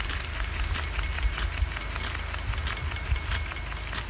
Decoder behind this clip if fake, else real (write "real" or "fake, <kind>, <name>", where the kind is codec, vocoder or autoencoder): real